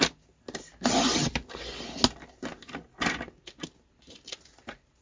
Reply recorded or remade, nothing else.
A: recorded